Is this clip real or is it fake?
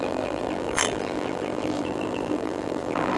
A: fake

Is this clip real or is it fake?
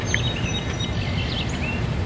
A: real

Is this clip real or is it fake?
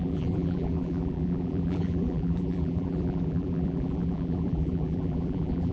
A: fake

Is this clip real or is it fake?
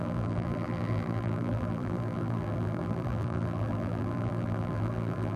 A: fake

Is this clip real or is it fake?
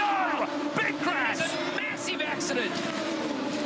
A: fake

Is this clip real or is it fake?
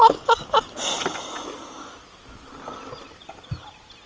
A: real